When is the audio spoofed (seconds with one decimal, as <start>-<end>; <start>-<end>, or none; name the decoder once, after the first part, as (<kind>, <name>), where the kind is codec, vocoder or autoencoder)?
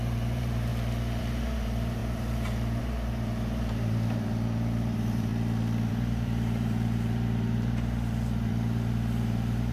0.0-0.7 (vocoder, BigVGAN v2); 1.2-5.3; 5.9-9.7